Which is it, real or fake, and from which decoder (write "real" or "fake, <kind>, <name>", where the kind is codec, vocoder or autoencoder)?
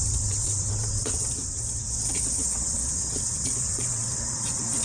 fake, vocoder, WaveNeXt